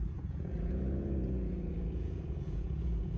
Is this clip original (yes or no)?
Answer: no